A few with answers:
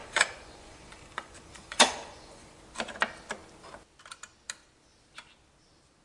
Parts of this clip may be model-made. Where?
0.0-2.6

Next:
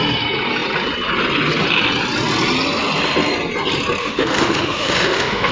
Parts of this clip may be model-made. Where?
4.0-5.5

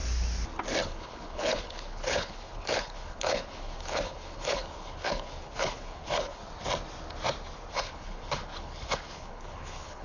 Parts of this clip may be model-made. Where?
0.8-6.4; 7.7-10.0

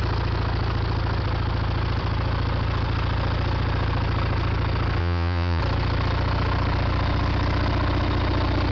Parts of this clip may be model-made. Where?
5.0-5.6